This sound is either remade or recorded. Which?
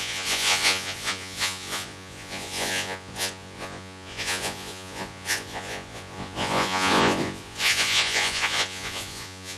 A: remade